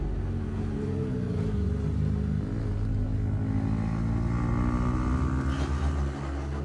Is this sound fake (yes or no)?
no